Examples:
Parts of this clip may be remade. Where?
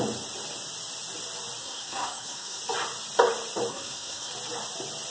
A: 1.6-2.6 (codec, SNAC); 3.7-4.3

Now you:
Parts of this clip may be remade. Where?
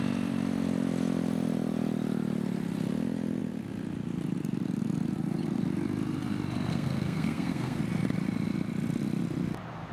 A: 6.7-7.8 (codec, SNAC)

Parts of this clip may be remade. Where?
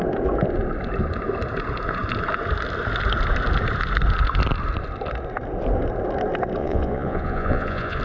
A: 6.6-8.0 (vocoder, Vocos)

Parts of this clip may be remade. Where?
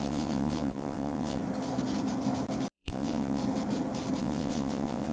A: 0.0-1.4 (vocoder, WaveNeXt); 2.7-3.4; 4.2-5.1